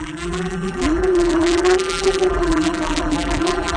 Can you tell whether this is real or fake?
fake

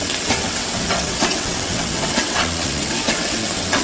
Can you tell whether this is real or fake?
fake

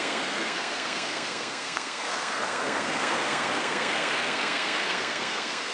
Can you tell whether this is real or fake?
fake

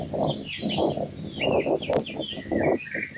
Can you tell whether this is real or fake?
real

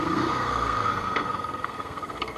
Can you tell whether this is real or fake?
fake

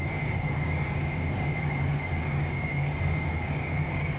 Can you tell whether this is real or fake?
fake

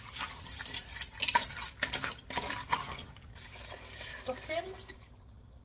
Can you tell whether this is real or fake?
fake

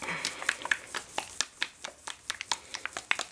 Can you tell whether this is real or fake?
real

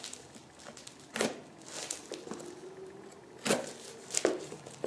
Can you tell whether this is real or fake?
real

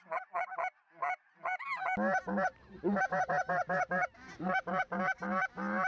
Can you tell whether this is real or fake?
real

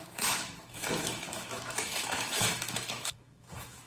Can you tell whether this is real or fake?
fake